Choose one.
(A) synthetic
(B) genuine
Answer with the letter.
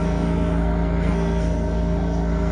A